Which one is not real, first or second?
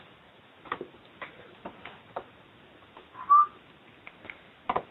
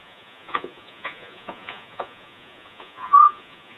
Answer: second